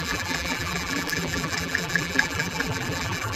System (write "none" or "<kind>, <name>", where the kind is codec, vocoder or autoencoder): vocoder, BigVGAN v2